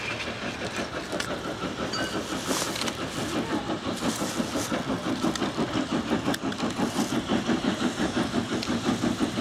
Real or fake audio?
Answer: real